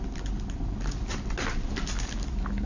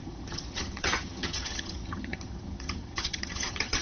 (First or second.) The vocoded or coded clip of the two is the second